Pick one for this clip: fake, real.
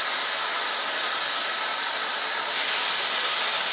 real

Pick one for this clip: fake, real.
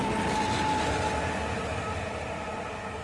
real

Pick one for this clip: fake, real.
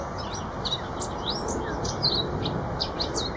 real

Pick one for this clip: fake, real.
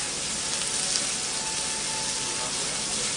real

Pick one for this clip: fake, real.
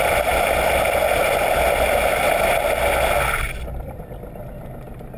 real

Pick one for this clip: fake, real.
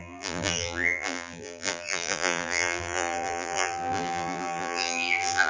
fake